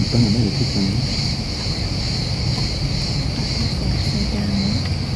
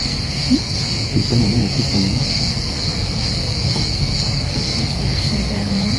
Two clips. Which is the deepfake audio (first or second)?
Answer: second